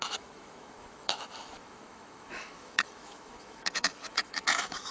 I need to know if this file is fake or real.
fake